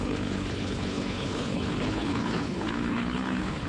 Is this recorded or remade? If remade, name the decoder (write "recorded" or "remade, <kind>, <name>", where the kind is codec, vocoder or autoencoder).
remade, codec, HILCodec